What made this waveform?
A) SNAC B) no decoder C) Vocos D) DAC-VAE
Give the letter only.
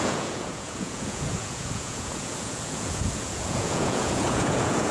C